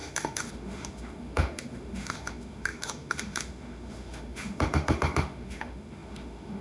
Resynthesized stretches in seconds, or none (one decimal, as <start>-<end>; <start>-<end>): 0.0-6.6